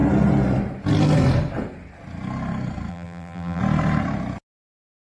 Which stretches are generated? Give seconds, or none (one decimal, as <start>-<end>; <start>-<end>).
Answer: 2.9-3.6